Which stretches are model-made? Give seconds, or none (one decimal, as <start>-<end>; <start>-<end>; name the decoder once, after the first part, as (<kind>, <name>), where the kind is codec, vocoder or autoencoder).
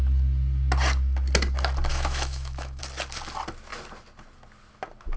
1.9-2.8 (autoencoder, DAC-VAE)